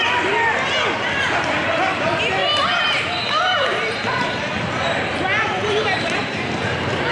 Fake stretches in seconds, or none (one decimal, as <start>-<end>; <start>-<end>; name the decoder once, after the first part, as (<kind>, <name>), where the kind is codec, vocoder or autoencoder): 2.4-4.4 (vocoder, BigVGAN v2); 5.3-6.6